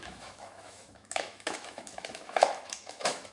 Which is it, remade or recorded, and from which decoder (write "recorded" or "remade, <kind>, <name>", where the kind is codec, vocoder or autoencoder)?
remade, autoencoder, DAC-VAE